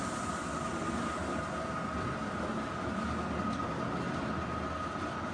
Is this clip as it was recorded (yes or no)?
yes